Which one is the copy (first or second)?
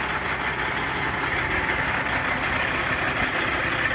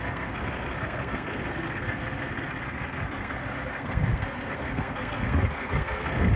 second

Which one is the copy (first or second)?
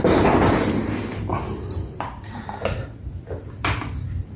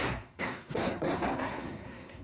second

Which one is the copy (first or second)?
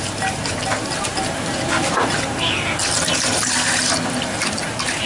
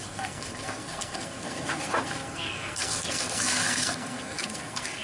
second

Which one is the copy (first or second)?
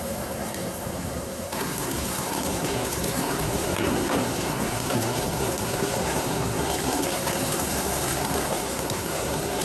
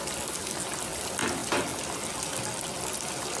first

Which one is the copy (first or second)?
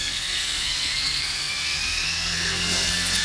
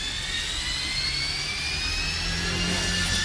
first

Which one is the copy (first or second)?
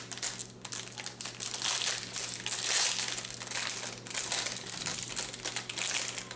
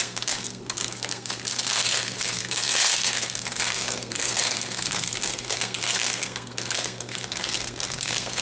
second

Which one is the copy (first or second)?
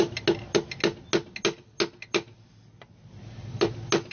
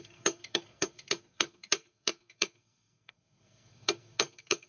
second